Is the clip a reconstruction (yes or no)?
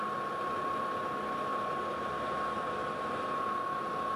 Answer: no